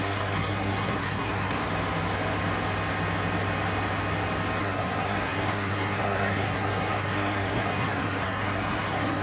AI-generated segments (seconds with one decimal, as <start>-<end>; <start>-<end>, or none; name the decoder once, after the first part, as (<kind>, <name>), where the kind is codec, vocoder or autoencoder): 0.0-1.6 (codec, SNAC); 4.6-9.2